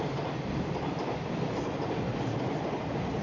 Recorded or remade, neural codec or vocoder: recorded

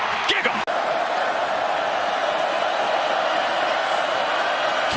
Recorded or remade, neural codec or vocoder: recorded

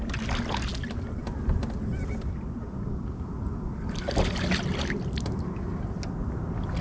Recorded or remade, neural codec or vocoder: recorded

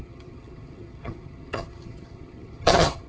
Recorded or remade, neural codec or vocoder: remade, vocoder, HiFi-GAN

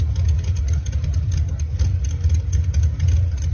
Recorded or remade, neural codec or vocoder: recorded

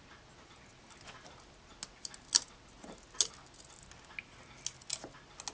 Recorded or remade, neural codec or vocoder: recorded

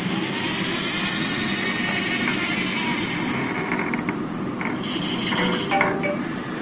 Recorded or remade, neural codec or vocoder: recorded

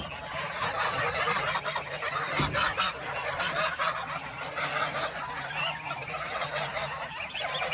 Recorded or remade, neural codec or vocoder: recorded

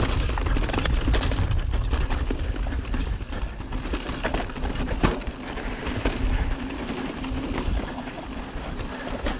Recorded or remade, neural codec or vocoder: recorded